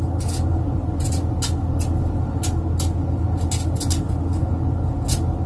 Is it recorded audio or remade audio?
recorded